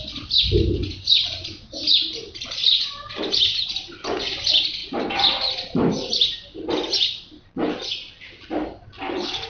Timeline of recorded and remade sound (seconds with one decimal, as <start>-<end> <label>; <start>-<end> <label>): 0.0-9.5 recorded